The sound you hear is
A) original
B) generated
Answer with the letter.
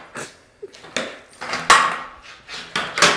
A